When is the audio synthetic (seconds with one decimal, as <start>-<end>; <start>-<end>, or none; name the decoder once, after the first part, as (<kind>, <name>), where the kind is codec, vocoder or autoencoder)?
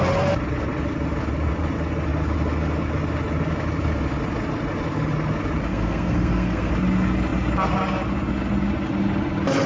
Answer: 5.7-6.7 (codec, SNAC)